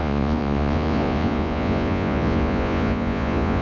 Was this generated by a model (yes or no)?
yes